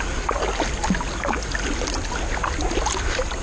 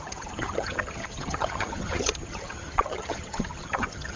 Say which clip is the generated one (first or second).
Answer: second